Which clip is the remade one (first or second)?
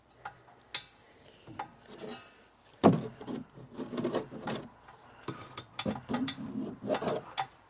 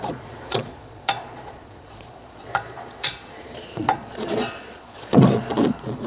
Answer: second